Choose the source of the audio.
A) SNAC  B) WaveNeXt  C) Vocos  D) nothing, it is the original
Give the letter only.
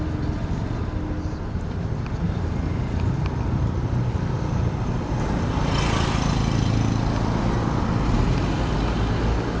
D